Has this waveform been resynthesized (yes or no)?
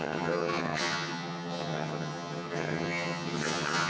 yes